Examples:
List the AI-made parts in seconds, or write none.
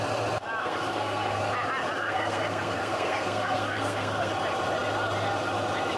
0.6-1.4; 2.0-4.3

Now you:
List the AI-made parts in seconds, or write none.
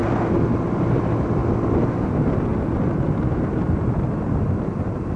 none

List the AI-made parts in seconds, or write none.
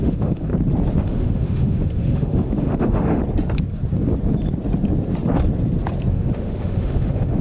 0.0-0.5; 1.0-3.2; 6.1-7.4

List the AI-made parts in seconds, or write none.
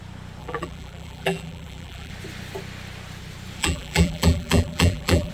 0.4-2.1; 3.6-5.3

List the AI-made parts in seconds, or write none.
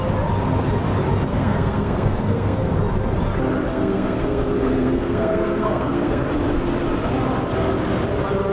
1.3-2.7; 3.7-6.2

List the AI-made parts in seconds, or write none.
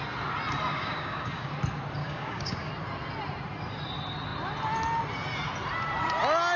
0.7-1.5; 2.0-2.7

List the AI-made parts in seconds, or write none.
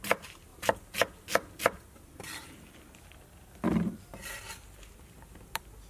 none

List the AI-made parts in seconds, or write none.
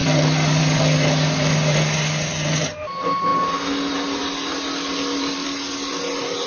none